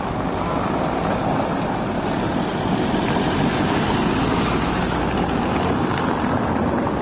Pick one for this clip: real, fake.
real